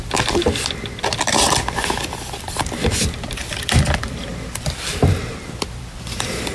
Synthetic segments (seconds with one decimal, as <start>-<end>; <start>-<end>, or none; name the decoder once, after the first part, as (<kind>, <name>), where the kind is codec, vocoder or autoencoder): 0.0-4.3 (vocoder, BigVGAN v2); 5.6-6.5